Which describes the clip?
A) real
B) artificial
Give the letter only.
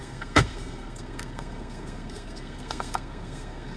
B